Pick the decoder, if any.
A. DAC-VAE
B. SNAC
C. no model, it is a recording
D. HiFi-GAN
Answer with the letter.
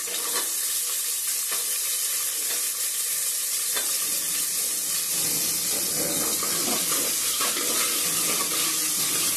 C